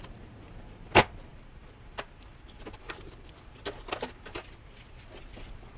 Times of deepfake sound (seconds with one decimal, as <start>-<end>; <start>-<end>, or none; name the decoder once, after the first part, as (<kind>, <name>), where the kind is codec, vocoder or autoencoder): none